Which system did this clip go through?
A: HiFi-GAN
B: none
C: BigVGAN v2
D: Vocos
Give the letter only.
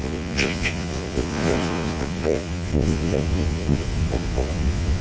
D